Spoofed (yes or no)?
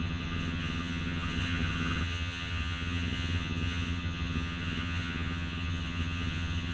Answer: yes